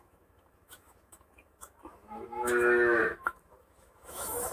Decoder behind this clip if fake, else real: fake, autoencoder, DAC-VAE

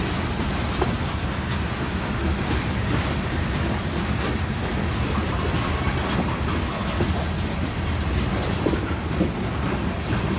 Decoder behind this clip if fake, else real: real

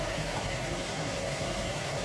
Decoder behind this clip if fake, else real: fake, codec, SNAC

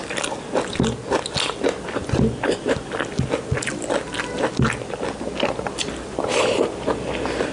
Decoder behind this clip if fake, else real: real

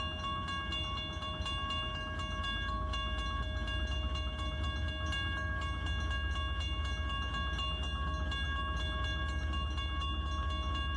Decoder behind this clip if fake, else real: real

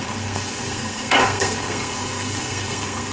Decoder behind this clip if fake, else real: fake, codec, SNAC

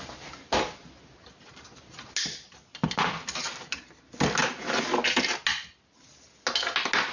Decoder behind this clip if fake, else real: real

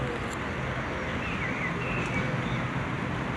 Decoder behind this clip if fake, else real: real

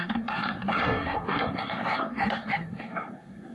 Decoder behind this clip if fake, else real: fake, codec, SNAC